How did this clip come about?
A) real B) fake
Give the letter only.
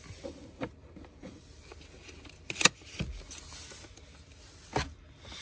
A